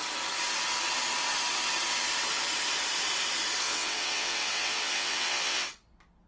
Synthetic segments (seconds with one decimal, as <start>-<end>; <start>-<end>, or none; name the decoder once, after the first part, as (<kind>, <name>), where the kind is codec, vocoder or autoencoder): 3.6-5.7 (vocoder, WaveNeXt)